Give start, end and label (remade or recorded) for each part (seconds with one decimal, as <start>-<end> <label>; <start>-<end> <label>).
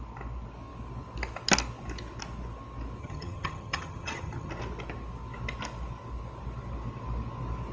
0.0-3.0 recorded; 3.0-4.5 remade; 4.5-7.7 recorded